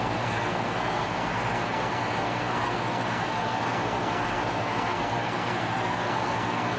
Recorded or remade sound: remade